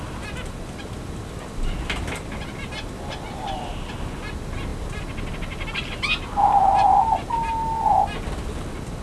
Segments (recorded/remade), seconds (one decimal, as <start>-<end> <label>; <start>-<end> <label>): 0.0-9.0 recorded

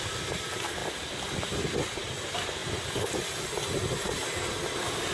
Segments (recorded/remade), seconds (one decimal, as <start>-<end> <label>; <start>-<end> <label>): 0.0-5.1 recorded

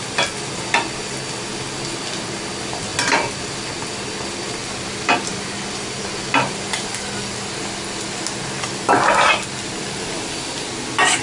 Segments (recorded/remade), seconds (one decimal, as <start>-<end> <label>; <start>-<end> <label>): 0.0-11.2 recorded

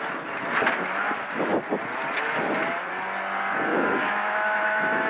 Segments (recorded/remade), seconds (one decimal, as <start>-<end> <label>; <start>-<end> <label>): 0.0-3.7 recorded; 3.7-5.1 remade

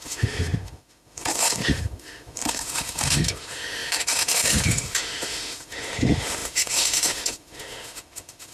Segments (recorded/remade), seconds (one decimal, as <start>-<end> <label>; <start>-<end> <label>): 0.0-8.5 remade

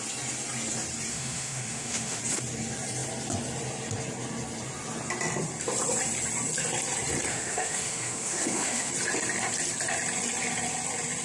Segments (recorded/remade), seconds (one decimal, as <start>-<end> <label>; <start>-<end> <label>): 0.0-1.1 recorded; 1.1-2.2 remade; 2.2-7.3 recorded; 7.3-8.9 remade; 8.9-11.2 recorded

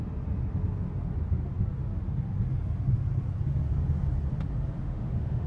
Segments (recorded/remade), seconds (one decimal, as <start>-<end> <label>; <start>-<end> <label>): 0.0-4.8 recorded; 4.8-5.5 remade

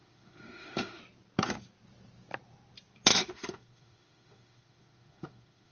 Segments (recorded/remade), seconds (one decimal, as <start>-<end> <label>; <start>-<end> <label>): 0.0-1.0 remade; 1.0-3.1 recorded; 3.1-5.7 remade